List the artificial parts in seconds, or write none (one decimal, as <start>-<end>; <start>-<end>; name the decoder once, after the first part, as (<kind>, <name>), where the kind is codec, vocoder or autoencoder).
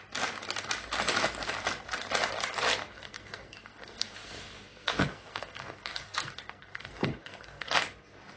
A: 2.8-7.8 (codec, SNAC)